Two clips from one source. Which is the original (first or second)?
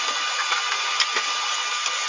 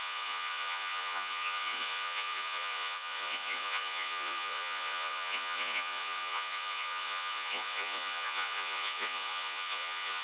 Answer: first